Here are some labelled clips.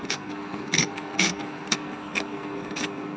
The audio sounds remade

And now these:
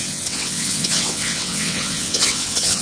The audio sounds remade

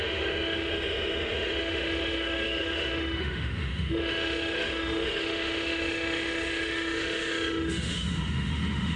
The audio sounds remade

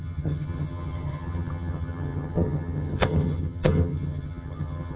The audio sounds remade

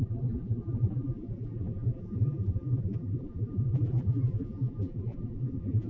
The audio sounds remade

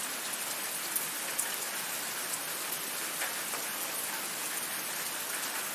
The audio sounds recorded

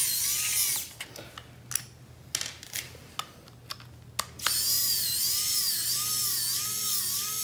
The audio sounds recorded